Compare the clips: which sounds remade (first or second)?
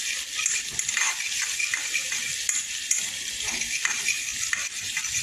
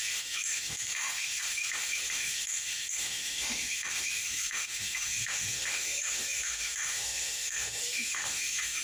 second